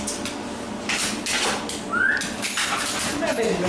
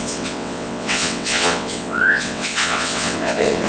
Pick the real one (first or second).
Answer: first